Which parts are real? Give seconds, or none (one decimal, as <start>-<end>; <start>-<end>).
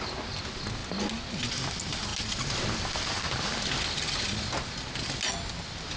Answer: 0.0-6.0